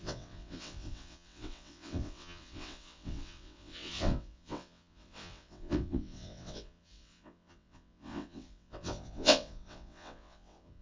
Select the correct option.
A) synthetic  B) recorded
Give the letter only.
A